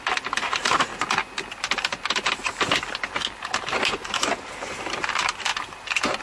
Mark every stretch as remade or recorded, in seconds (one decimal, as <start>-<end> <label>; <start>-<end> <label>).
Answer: 0.0-5.5 recorded; 5.5-6.2 remade